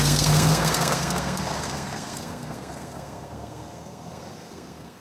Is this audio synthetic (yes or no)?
yes